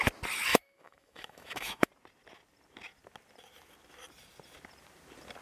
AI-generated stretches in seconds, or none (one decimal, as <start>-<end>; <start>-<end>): 0.5-1.9